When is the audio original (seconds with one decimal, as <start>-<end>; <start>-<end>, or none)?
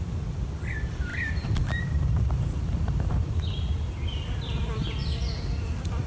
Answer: 0.0-1.1; 3.3-4.6